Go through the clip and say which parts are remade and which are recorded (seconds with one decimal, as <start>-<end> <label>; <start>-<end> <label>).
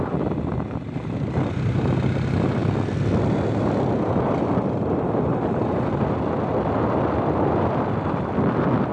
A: 0.0-8.9 recorded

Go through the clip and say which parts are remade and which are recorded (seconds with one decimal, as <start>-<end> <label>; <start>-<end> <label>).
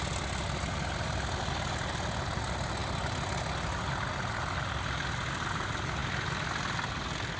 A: 0.0-7.4 recorded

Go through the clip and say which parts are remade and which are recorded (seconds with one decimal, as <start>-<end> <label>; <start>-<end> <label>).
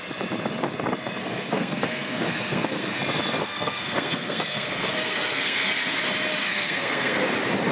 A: 0.0-1.2 recorded; 1.2-3.0 remade; 3.0-3.4 recorded; 3.4-5.7 remade; 5.7-6.4 recorded; 6.4-7.2 remade; 7.2-7.7 recorded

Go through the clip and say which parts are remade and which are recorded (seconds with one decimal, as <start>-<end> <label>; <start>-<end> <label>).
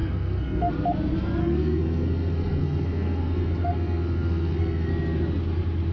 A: 0.0-0.7 remade; 0.7-1.4 recorded; 1.4-4.9 remade; 4.9-5.9 recorded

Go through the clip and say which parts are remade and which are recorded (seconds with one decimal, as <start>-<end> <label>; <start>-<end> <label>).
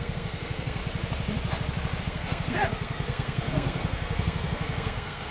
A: 0.0-0.8 remade; 0.8-2.0 recorded; 2.0-5.3 remade